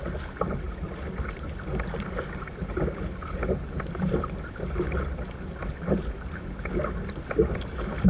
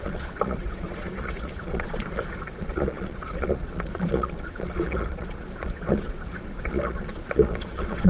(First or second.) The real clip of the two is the first